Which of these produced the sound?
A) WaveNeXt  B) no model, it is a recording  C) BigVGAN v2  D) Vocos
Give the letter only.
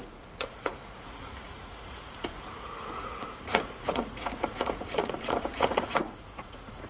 D